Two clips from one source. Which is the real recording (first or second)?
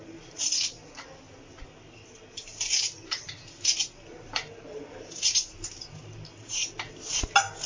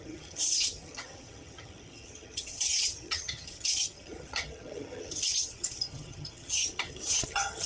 first